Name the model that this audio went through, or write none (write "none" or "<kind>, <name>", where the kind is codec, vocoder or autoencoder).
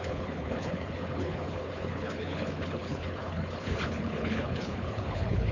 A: codec, HILCodec